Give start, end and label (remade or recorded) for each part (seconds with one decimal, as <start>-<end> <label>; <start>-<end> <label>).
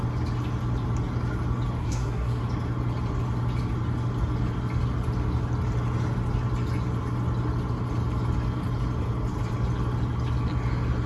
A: 0.0-1.8 recorded; 1.8-2.4 remade; 2.4-11.1 recorded